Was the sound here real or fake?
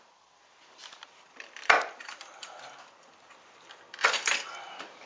fake